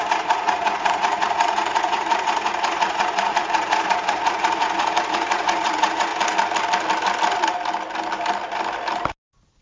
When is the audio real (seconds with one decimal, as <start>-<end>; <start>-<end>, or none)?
6.1-9.6